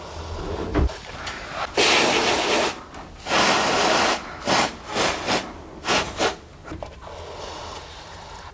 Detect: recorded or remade recorded